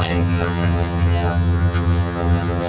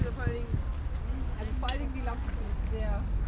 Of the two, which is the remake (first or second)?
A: first